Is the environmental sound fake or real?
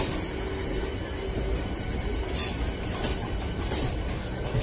real